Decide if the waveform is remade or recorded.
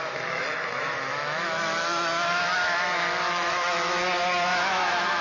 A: remade